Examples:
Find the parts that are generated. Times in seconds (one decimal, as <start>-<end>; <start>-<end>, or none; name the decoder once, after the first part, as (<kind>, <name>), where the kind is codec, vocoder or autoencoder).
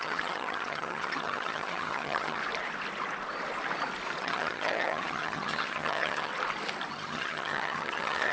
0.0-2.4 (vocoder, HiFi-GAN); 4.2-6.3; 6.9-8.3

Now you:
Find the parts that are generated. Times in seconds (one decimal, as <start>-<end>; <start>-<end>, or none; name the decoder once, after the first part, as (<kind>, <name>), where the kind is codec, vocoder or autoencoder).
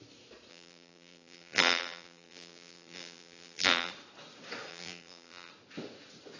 0.5-3.9 (vocoder, BigVGAN v2); 4.7-5.5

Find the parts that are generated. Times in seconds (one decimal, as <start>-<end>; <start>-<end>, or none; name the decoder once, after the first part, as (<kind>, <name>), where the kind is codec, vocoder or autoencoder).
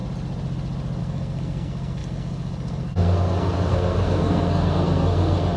1.0-5.6 (codec, SNAC)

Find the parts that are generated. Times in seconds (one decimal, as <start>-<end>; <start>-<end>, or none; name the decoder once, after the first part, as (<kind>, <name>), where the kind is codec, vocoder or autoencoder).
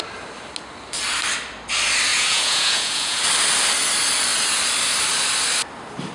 2.1-3.2 (vocoder, Vocos)